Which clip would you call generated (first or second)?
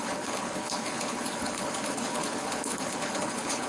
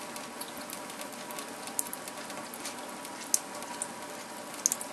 first